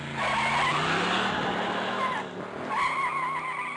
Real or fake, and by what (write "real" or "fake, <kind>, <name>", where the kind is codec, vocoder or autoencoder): real